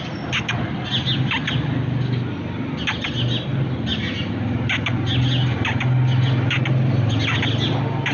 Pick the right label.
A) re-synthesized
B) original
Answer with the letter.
B